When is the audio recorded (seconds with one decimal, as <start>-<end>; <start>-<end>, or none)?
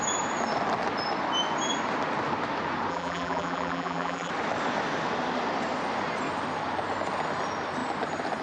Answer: 0.0-2.9; 4.3-8.4